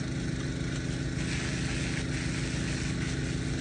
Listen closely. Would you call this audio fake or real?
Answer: real